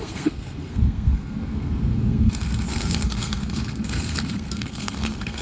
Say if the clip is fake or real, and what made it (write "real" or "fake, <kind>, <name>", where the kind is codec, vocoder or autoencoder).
fake, codec, SNAC